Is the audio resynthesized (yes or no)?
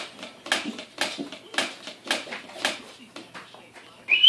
no